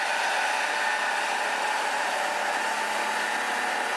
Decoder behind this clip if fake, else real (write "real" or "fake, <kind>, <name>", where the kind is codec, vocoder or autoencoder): real